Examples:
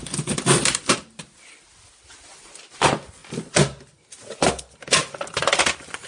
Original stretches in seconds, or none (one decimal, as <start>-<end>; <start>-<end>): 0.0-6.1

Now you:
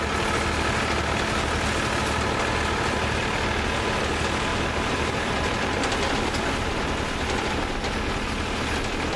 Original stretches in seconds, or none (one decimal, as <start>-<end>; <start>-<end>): 0.0-4.5; 5.9-9.2

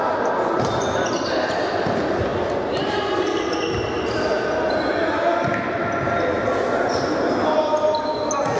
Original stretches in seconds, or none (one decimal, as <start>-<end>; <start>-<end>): 0.0-8.6